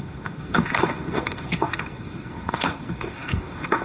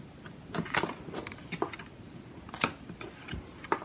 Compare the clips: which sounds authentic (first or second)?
second